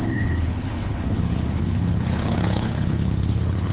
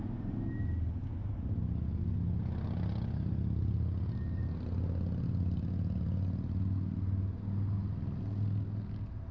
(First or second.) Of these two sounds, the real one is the second